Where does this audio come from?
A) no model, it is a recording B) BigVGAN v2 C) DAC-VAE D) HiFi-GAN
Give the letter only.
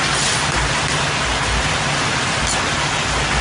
A